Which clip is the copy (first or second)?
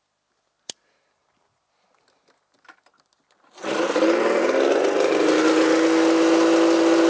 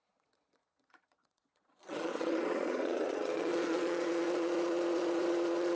second